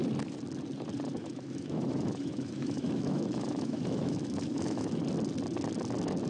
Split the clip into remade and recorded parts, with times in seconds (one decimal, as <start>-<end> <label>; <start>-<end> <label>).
0.0-1.2 recorded; 1.2-5.0 remade; 5.0-6.3 recorded